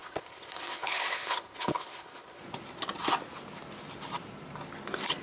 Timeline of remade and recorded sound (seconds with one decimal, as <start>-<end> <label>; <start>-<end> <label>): 0.0-2.4 remade; 2.4-5.2 recorded

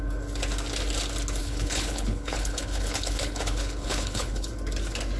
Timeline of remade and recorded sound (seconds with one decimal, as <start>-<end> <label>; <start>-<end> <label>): 0.0-1.4 recorded; 1.4-4.5 remade; 4.5-5.2 recorded

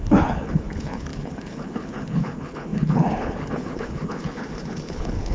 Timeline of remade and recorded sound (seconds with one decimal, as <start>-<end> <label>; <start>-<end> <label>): 0.0-5.3 remade

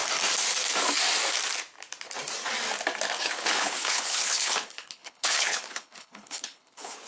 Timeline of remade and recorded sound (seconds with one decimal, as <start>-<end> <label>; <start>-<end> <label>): 0.0-3.2 recorded; 3.2-7.1 remade

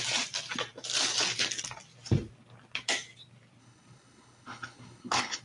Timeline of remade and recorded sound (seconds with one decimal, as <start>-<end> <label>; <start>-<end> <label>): 0.0-3.6 recorded; 3.6-5.4 remade

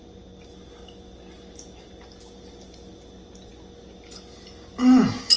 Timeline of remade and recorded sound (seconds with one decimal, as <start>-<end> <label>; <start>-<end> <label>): 0.0-5.4 recorded